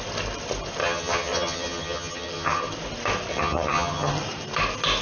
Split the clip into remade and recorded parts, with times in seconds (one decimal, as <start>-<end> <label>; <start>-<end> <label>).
0.0-0.8 recorded; 0.8-2.7 remade; 2.7-3.3 recorded; 3.3-4.1 remade; 4.1-5.0 recorded